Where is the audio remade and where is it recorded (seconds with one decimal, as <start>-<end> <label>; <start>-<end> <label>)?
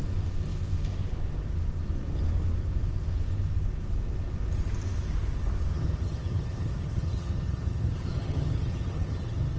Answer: 0.0-5.7 recorded; 5.7-9.6 remade